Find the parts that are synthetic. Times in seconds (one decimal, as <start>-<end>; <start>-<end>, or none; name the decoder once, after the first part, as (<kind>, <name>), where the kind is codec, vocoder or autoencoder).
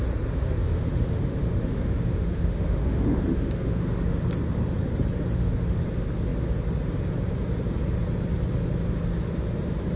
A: 0.6-4.2 (autoencoder, DAC-VAE); 5.3-5.8